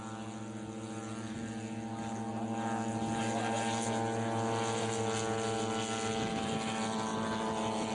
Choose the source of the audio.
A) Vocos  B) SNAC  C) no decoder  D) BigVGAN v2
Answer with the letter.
C